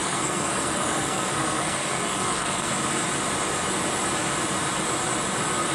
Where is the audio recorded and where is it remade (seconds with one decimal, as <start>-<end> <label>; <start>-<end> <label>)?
0.0-2.7 remade; 2.7-5.7 recorded